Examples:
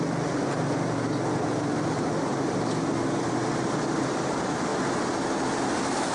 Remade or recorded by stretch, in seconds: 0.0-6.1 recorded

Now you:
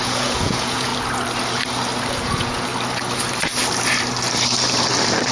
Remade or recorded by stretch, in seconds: 0.0-0.9 remade; 0.9-2.1 recorded; 2.1-2.7 remade; 2.7-5.3 recorded

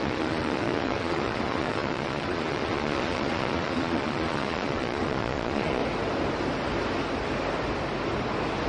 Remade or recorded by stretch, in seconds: 0.0-5.8 remade; 5.8-8.7 recorded

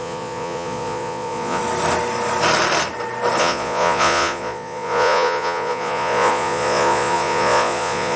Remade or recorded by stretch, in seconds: 0.0-1.6 remade; 1.6-3.4 recorded; 3.4-8.2 remade